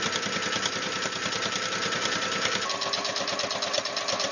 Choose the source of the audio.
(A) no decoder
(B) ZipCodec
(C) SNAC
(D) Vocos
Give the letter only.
A